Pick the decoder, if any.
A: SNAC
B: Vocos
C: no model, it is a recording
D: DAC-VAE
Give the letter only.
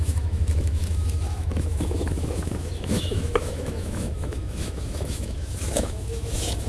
D